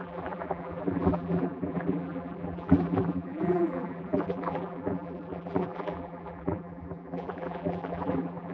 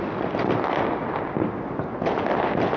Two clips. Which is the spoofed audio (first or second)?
first